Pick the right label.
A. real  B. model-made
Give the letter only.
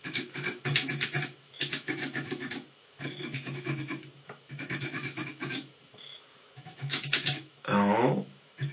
B